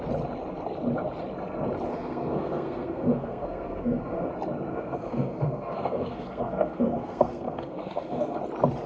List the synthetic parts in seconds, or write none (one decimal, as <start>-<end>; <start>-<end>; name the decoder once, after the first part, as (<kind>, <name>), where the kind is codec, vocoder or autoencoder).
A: 1.9-4.3 (codec, SNAC); 4.7-8.4